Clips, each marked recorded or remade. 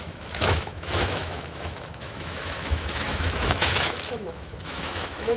remade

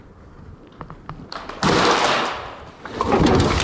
recorded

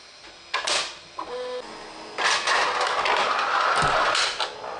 recorded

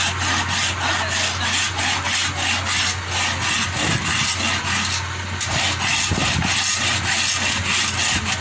recorded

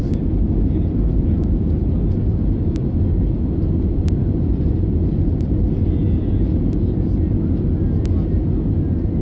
recorded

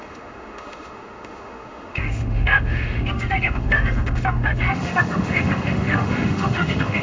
remade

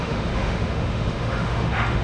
remade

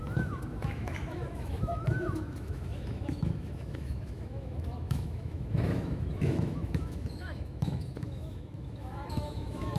remade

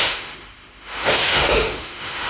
remade